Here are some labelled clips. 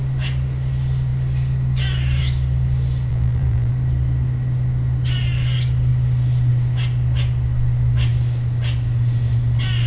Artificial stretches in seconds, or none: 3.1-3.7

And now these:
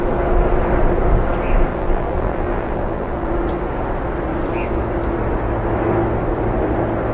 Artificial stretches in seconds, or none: 1.7-3.3

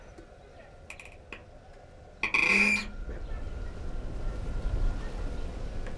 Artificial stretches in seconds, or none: none